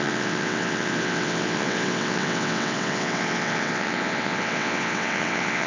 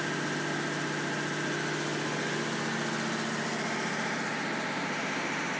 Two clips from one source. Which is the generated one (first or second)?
first